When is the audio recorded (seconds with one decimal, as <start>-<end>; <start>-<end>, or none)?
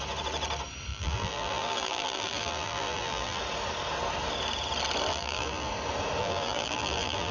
0.0-0.9; 3.4-5.1; 5.7-6.2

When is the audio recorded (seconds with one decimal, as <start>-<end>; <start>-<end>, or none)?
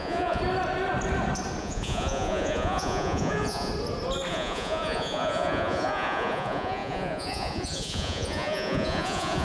0.4-1.6; 3.7-4.3